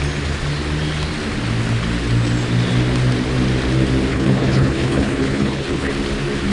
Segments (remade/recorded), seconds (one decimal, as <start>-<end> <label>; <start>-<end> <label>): 0.0-4.1 recorded; 4.1-5.9 remade; 5.9-6.5 recorded